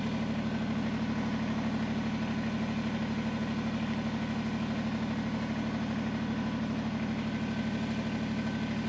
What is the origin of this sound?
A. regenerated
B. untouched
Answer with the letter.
B